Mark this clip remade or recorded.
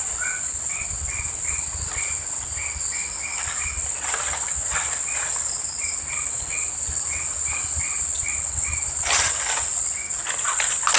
recorded